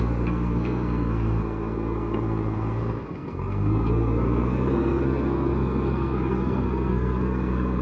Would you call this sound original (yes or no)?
no